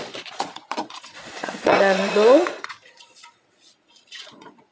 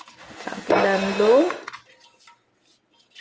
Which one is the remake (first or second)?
first